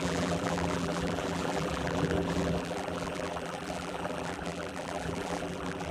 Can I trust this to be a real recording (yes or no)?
no